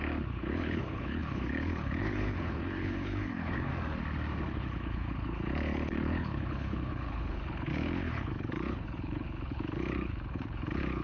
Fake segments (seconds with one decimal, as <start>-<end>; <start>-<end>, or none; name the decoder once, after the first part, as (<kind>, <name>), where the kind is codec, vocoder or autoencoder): 0.0-3.7 (codec, HILCodec); 4.5-11.0